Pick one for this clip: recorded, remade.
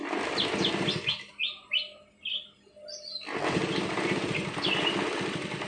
recorded